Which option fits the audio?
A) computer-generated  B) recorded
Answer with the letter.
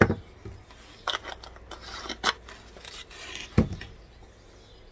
B